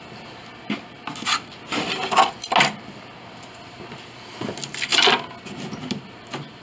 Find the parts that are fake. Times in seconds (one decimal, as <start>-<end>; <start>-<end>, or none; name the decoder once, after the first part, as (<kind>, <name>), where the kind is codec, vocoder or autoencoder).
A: none